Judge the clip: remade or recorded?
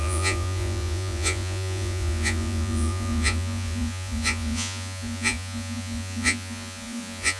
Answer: remade